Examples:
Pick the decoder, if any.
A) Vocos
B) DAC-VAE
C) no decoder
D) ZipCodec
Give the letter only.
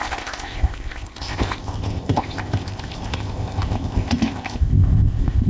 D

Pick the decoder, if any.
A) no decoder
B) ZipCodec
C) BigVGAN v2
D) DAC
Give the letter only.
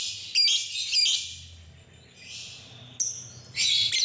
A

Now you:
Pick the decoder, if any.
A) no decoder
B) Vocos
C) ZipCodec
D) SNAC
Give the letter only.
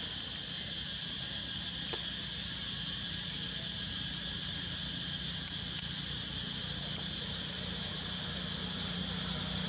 A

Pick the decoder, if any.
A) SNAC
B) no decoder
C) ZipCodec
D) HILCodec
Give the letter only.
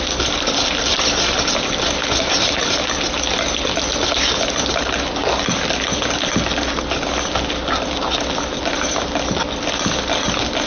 B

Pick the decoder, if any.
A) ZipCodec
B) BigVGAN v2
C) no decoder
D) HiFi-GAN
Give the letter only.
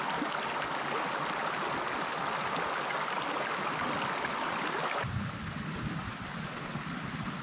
C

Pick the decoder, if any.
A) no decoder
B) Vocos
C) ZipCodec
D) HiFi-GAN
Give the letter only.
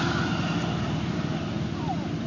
A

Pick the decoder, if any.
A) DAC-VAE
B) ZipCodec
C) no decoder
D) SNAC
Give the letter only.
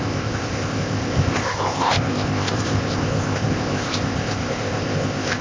B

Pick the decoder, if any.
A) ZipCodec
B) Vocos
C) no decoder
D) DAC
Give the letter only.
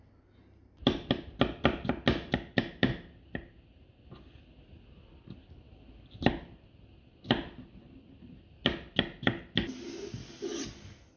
C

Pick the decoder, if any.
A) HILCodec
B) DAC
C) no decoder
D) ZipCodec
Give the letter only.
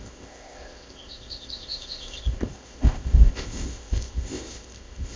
D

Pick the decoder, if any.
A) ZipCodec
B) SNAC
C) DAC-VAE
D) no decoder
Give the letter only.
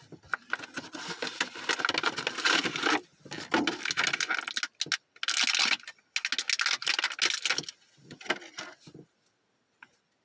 D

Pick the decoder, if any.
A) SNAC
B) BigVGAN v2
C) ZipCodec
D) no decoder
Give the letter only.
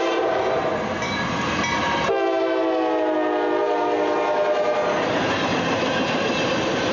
D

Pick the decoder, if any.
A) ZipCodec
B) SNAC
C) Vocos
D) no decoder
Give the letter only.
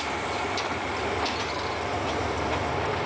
D